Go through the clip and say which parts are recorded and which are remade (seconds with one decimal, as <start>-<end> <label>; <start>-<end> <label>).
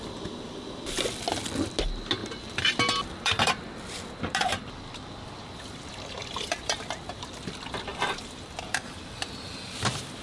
0.0-2.2 recorded; 2.2-3.5 remade; 3.5-6.2 recorded; 6.2-6.8 remade; 6.8-7.9 recorded; 7.9-9.2 remade; 9.2-10.2 recorded